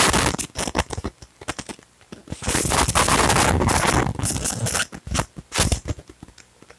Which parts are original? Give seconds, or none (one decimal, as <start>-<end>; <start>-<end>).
0.0-6.8